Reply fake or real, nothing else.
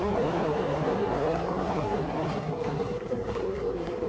fake